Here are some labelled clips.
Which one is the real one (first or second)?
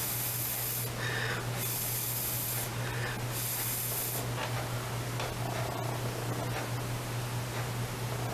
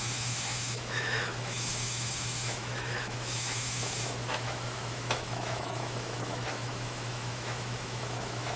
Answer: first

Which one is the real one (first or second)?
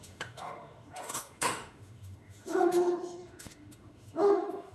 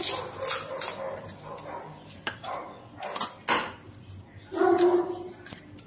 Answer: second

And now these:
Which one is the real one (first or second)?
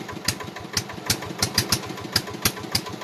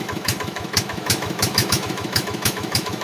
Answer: first